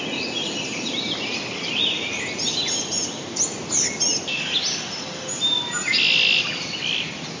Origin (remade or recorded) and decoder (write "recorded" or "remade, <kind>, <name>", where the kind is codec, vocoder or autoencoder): recorded